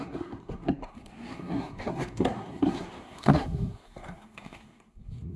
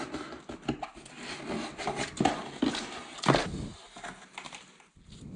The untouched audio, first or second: second